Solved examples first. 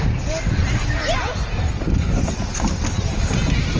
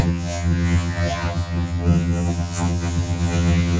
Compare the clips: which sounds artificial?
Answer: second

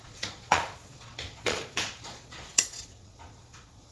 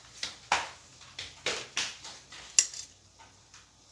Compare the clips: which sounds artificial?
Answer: first